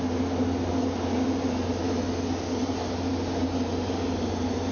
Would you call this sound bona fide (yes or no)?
yes